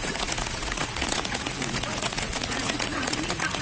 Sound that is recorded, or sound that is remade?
remade